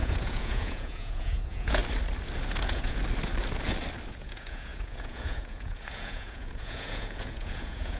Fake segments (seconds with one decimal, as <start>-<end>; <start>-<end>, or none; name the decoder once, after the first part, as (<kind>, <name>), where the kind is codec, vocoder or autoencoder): 0.0-1.8 (vocoder, Vocos); 2.6-3.0; 4.1-8.0